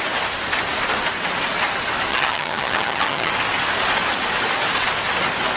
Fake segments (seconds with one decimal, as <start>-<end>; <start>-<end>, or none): 2.1-3.3